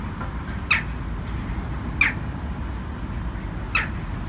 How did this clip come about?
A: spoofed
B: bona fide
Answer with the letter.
B